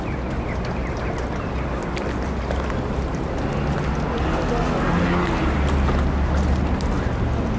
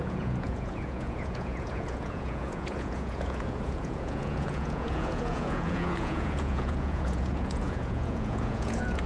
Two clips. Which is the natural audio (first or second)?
first